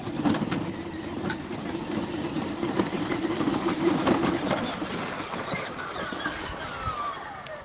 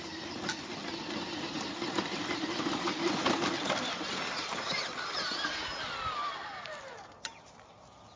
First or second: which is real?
second